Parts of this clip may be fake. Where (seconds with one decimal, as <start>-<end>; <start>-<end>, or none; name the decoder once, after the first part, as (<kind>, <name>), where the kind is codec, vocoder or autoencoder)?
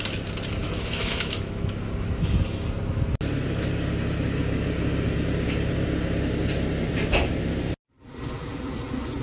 0.6-1.8 (autoencoder, DAC-VAE)